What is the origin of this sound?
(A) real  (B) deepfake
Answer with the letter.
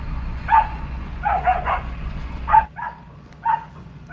B